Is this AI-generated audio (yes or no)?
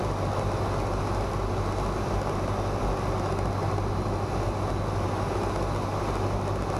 no